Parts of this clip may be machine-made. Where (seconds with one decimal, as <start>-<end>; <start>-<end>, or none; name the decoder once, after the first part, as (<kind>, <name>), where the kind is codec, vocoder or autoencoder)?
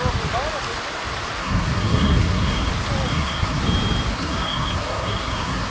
1.4-2.7 (codec, SNAC); 3.1-3.6; 4.1-5.7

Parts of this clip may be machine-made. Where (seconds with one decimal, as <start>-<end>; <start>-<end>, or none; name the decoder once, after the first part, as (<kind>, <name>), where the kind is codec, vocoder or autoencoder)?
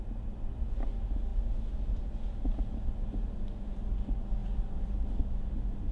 none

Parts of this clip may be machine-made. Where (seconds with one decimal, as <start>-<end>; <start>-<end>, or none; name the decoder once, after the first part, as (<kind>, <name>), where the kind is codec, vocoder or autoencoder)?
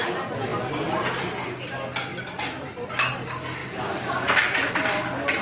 3.6-4.7 (vocoder, BigVGAN v2)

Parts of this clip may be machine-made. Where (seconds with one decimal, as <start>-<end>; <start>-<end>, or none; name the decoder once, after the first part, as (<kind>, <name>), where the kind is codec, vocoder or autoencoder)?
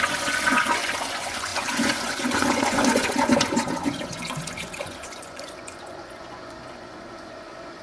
0.0-7.8 (vocoder, Vocos)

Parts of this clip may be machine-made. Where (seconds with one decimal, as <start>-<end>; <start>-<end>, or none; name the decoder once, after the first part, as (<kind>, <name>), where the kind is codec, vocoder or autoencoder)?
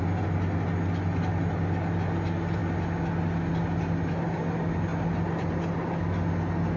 none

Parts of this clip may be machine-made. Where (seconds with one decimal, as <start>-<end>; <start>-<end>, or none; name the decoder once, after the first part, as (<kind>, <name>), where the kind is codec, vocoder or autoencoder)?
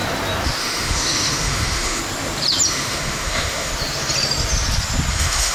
0.6-2.0 (autoencoder, DAC-VAE); 2.7-3.7; 5.1-5.5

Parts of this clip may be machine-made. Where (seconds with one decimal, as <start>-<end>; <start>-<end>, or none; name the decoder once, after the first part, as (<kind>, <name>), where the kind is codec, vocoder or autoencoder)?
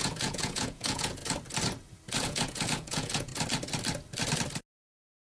0.0-1.2 (vocoder, Vocos); 2.2-3.3; 4.7-5.3